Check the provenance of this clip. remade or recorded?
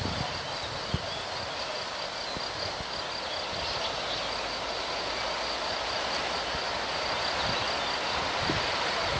recorded